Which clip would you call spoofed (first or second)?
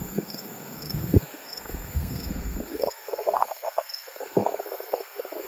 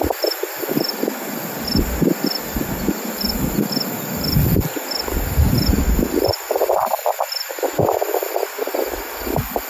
first